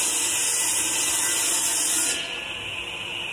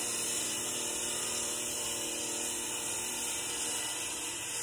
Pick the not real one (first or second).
second